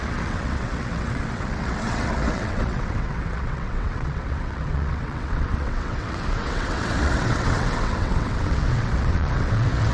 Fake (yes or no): yes